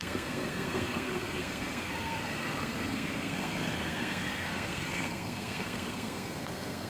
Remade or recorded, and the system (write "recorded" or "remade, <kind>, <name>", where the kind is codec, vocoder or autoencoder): remade, codec, SNAC